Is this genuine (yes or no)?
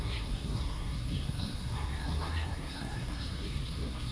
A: no